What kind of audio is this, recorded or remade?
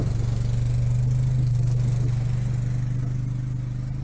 recorded